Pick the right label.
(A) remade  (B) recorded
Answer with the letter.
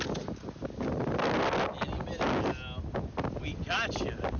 B